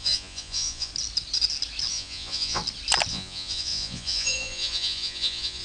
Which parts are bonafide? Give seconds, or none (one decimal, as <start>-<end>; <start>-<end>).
0.9-1.9; 2.6-3.1